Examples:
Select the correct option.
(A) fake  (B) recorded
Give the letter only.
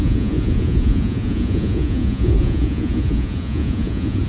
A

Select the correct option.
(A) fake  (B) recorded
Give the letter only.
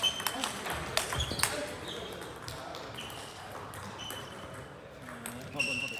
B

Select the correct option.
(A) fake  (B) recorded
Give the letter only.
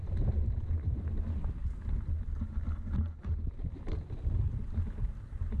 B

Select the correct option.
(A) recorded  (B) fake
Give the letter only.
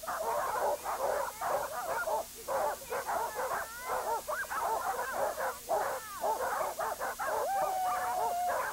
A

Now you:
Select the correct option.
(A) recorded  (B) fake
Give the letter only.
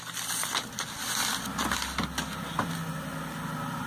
A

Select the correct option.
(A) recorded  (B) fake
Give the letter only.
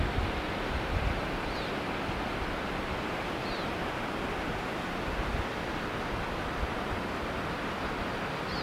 A